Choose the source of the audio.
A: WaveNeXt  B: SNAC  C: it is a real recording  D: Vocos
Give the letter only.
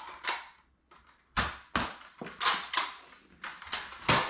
C